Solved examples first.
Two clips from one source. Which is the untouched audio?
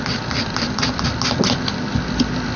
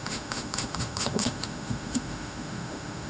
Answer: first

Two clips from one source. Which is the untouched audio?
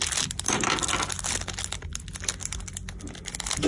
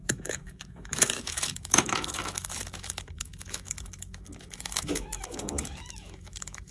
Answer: first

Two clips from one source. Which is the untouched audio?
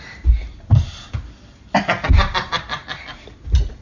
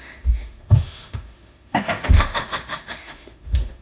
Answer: first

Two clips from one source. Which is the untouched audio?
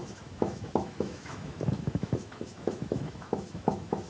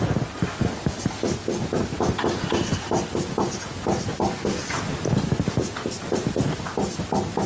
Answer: second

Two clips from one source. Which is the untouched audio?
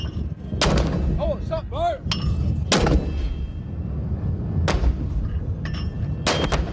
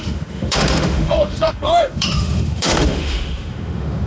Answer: first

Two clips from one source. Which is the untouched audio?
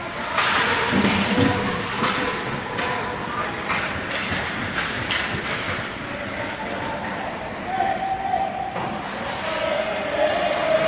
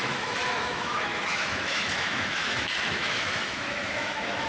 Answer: first